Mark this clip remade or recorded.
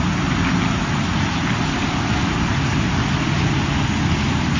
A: recorded